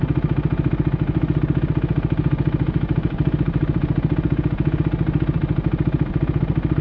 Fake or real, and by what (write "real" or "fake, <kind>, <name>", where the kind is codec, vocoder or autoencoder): real